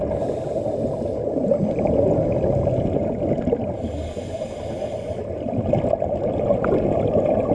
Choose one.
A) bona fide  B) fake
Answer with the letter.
A